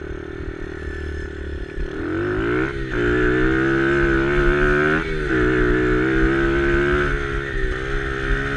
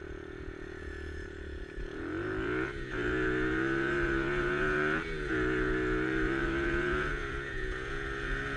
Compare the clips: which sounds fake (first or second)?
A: second